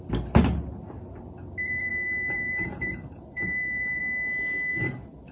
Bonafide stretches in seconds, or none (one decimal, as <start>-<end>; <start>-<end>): 0.0-1.9; 4.0-4.7